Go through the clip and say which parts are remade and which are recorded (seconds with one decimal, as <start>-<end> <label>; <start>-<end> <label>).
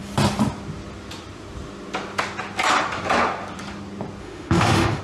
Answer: 0.0-4.2 recorded; 4.2-5.0 remade